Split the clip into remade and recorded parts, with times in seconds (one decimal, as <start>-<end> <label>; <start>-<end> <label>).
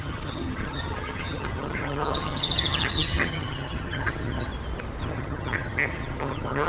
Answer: 0.0-4.5 remade; 4.5-5.0 recorded; 5.0-6.7 remade